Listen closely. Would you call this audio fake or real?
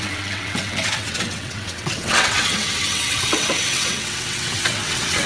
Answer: fake